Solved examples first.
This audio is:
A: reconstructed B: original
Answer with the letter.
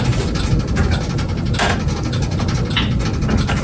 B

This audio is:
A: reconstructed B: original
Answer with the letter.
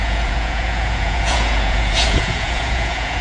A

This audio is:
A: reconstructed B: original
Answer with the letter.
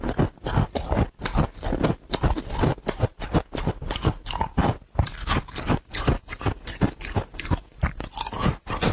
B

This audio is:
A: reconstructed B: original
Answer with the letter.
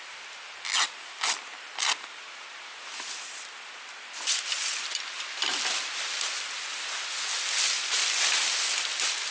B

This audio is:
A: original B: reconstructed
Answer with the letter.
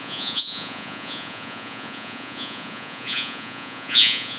B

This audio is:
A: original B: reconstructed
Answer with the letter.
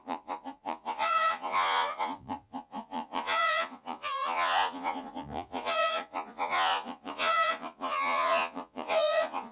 B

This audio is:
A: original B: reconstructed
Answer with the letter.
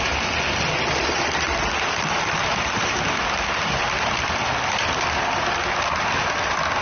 A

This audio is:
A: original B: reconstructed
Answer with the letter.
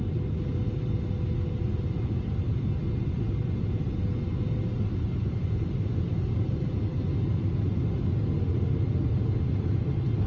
A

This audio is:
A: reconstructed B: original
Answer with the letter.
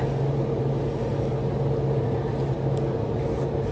B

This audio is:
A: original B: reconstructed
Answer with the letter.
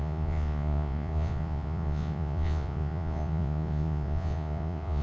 B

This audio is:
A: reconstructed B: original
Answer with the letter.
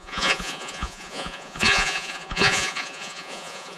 A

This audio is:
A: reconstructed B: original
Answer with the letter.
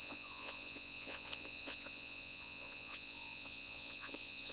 A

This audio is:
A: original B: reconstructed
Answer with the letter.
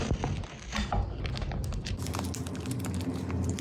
A